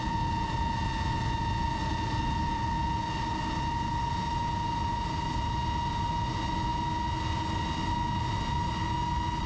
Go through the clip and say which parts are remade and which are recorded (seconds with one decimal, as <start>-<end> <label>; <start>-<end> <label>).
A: 0.0-1.6 recorded; 1.6-2.6 remade; 2.6-9.5 recorded